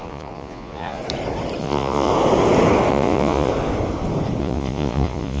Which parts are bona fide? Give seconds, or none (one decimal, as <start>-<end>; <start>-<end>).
1.0-1.6; 2.1-2.9; 3.5-4.4